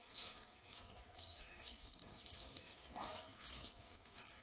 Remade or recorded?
remade